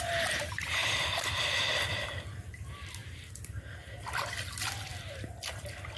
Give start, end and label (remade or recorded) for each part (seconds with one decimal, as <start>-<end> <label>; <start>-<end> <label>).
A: 0.0-0.8 recorded; 0.8-2.3 remade; 2.3-3.0 recorded; 3.0-3.6 remade; 3.6-6.0 recorded